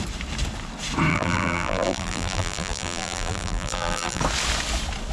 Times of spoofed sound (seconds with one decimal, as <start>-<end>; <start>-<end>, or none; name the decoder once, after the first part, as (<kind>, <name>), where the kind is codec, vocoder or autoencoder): 1.1-4.2 (vocoder, BigVGAN v2)